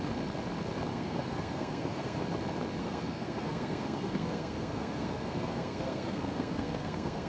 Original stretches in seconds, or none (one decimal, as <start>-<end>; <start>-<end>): 0.0-0.9; 2.2-2.8